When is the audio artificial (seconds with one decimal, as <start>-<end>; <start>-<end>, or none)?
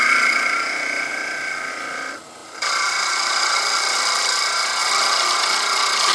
0.0-1.1; 1.7-4.8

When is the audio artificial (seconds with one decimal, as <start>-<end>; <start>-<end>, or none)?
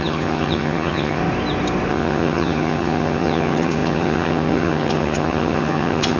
0.0-1.2; 1.9-6.2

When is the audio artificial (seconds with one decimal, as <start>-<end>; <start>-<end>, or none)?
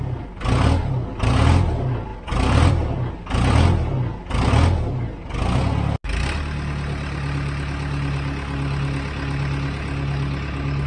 none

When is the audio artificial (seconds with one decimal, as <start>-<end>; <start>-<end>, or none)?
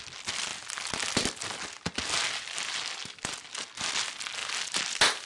none